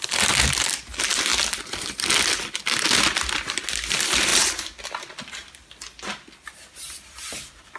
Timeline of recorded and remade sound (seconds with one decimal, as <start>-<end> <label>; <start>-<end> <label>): 0.0-7.8 recorded